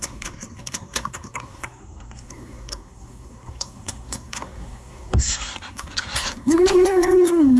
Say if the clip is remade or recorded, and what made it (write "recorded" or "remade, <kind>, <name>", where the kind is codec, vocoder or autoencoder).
remade, codec, SNAC